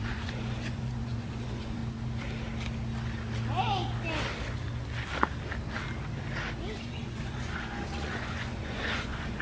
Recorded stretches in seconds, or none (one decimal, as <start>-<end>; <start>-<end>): 1.8-6.8